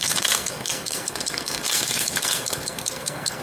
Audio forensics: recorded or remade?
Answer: remade